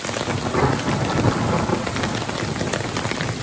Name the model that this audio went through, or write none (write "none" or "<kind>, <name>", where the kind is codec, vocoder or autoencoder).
none